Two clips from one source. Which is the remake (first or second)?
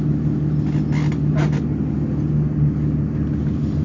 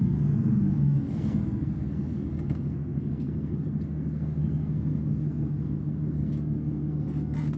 second